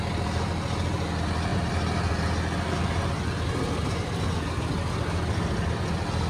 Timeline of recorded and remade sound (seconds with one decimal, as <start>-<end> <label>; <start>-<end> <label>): 0.0-6.3 recorded